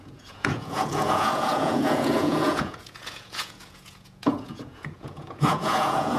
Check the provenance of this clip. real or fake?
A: fake